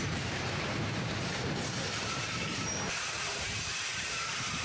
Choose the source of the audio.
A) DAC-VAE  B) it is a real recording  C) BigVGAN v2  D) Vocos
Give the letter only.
C